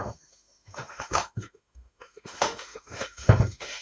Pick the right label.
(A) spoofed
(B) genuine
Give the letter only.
A